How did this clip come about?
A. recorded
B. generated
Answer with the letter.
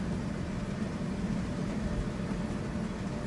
A